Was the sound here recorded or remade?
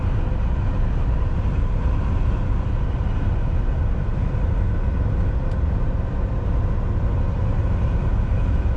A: recorded